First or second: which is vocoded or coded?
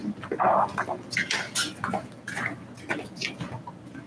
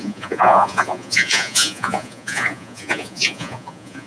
second